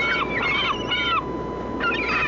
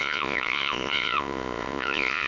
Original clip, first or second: first